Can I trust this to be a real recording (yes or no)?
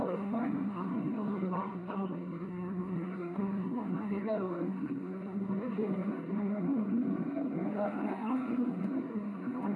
no